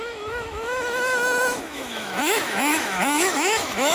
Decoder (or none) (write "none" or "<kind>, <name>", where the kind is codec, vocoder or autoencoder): autoencoder, DAC-VAE